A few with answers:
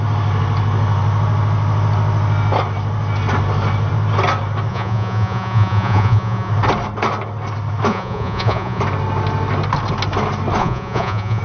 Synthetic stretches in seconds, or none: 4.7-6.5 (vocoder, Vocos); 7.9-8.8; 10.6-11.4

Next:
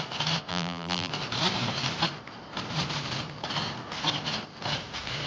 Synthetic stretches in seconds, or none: 0.5-1.1 (vocoder, BigVGAN v2)

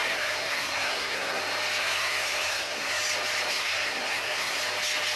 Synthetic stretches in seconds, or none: 0.0-1.4 (codec, SNAC); 1.8-3.0; 3.5-4.6

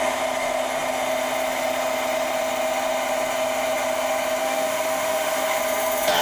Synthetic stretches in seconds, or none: 4.4-5.6 (autoencoder, DAC-VAE)